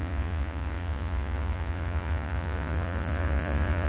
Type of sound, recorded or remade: remade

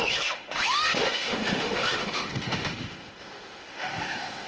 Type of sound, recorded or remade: remade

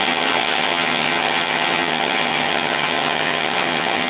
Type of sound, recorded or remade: remade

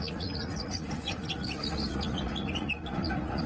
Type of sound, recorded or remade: remade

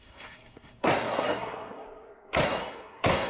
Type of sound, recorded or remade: remade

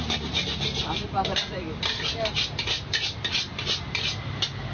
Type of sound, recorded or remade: recorded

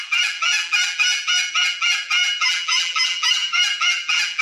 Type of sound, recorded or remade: remade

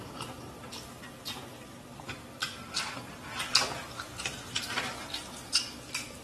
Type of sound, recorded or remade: recorded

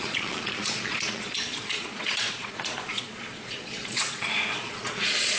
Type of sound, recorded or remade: remade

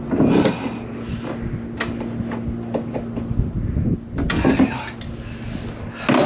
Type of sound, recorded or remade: recorded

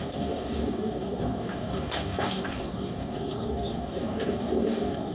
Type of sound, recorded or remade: remade